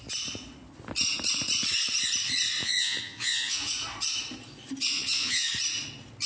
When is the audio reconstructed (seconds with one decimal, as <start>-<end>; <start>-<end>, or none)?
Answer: 2.6-3.7; 4.8-5.5